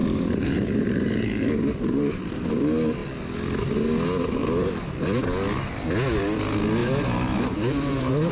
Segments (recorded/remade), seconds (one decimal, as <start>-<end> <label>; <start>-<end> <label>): 0.0-2.5 remade; 2.5-6.8 recorded; 6.8-8.3 remade